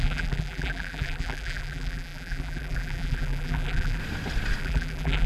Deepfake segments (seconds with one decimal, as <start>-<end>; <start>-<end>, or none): 0.0-4.0; 4.6-5.3